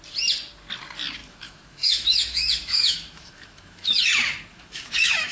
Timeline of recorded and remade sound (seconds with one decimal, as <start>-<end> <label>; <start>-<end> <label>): 0.0-1.2 recorded; 1.2-4.0 remade; 4.0-4.5 recorded; 4.5-5.3 remade